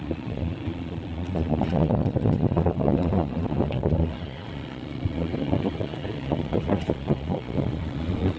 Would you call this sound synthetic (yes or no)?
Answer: yes